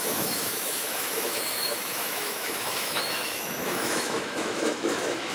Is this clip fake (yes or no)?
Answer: yes